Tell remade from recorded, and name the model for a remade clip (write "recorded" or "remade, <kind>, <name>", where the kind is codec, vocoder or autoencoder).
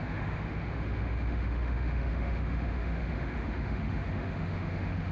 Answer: remade, autoencoder, DAC-VAE